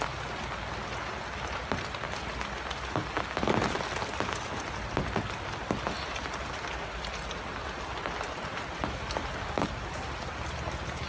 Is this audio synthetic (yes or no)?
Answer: no